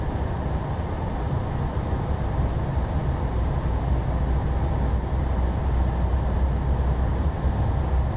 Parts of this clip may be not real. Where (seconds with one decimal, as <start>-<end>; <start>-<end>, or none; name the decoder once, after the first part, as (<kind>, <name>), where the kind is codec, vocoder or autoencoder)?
none